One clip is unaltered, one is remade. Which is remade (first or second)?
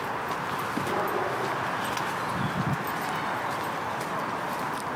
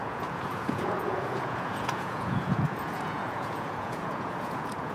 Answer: second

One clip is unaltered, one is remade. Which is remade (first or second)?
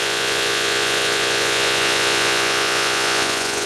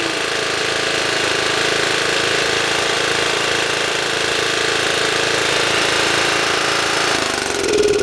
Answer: first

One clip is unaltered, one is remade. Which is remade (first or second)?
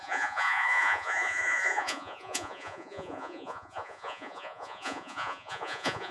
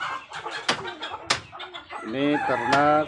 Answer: first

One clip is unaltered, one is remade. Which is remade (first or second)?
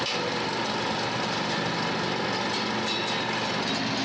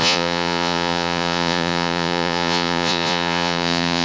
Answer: second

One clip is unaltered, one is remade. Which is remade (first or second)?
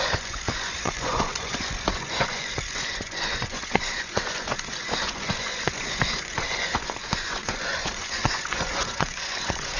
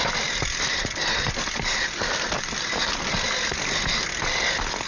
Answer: first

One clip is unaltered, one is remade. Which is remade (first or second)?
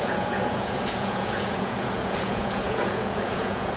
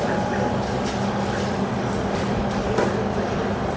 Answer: first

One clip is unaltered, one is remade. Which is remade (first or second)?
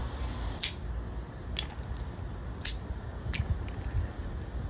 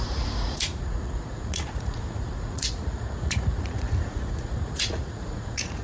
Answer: second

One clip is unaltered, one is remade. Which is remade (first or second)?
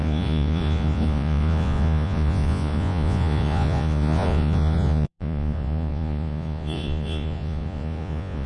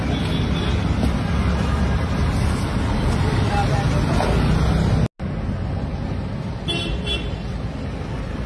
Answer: first